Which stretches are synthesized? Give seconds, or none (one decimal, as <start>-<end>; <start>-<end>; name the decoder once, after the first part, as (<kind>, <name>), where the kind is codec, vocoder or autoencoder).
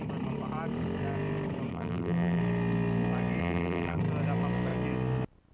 1.7-2.4 (vocoder, BigVGAN v2); 3.4-4.0